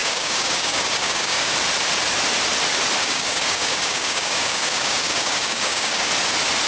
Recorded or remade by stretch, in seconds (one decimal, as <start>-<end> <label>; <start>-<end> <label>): 0.0-1.5 remade; 1.5-3.0 recorded; 3.0-6.1 remade; 6.1-6.7 recorded